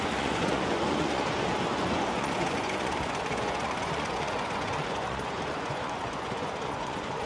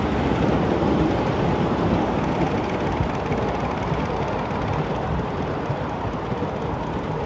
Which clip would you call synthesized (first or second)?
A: first